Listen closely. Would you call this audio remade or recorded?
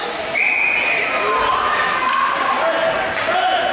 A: recorded